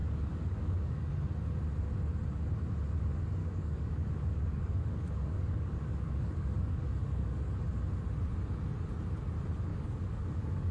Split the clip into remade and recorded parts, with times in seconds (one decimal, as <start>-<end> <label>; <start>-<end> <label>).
0.0-1.1 remade; 1.1-3.4 recorded; 3.4-7.4 remade; 7.4-9.7 recorded; 9.7-10.7 remade